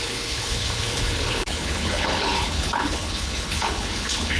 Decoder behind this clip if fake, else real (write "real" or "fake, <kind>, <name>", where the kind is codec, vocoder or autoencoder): fake, codec, HILCodec